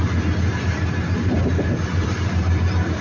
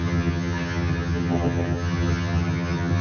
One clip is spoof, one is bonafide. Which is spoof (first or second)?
second